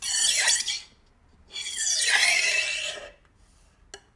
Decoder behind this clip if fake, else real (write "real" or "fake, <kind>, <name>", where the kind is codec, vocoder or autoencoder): real